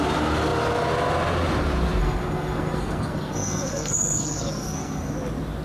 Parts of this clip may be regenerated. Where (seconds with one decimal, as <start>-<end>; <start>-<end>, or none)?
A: 2.0-5.1